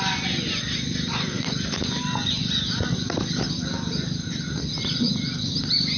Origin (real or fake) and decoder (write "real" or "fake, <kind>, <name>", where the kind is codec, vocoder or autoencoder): real